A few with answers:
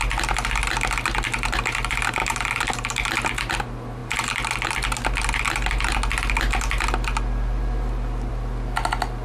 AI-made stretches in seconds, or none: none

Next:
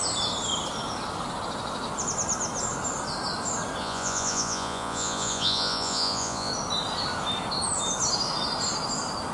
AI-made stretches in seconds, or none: 3.8-6.5

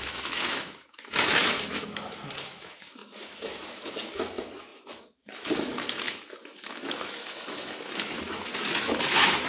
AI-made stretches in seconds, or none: 0.0-9.5

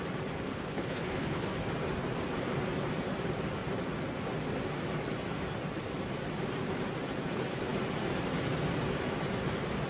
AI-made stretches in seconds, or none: 0.5-1.5

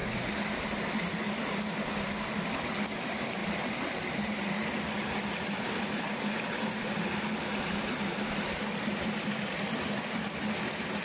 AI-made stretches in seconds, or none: none

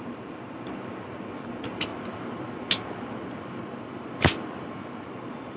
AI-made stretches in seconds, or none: 0.0-1.9; 5.1-5.6

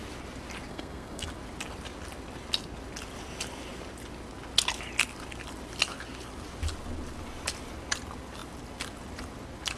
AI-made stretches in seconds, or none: 0.7-1.3

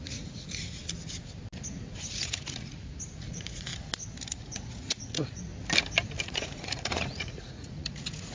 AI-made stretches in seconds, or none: 0.0-0.8; 2.1-3.7; 4.3-5.5; 6.2-8.3